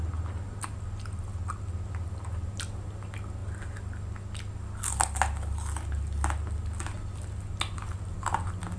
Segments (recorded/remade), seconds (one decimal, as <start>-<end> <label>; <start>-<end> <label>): 0.0-8.8 recorded